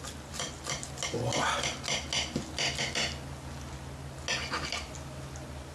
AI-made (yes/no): no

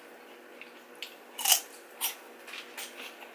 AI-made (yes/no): no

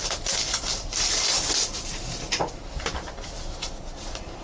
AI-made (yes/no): no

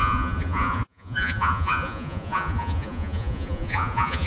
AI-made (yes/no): yes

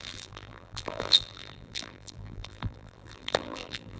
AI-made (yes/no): yes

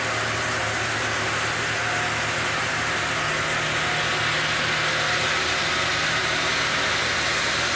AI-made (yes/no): no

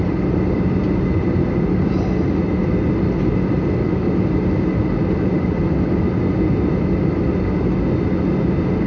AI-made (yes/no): no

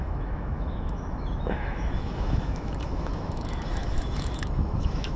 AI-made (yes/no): yes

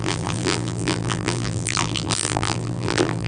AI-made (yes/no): yes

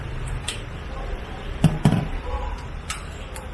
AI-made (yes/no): yes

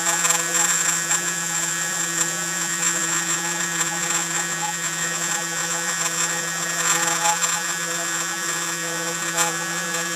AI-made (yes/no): yes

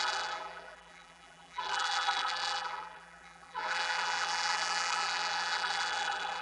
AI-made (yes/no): yes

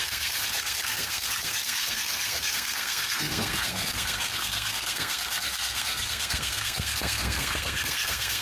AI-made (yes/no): yes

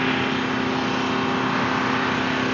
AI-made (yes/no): no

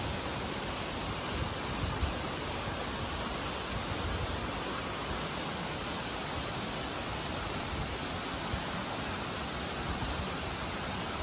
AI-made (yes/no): no